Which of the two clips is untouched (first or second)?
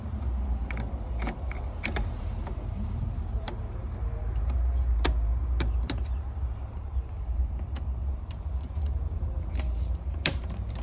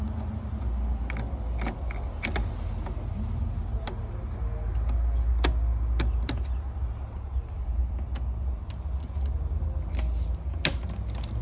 second